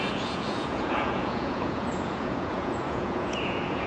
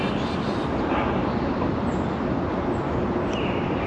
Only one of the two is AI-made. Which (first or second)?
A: first